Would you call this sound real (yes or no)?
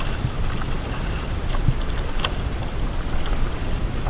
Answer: yes